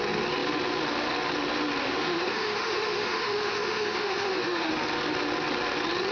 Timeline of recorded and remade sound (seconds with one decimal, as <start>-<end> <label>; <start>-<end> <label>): 0.0-1.8 recorded; 1.8-4.7 remade; 4.7-6.1 recorded